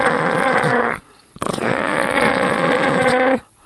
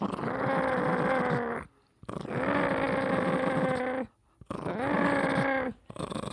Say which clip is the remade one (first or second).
first